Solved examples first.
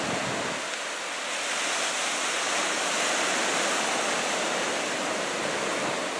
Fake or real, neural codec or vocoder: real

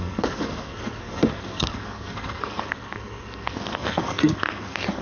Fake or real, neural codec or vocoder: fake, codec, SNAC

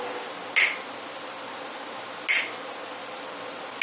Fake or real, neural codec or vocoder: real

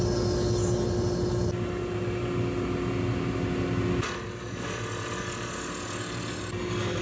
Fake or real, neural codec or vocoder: real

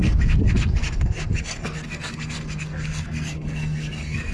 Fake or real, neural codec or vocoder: fake, codec, SNAC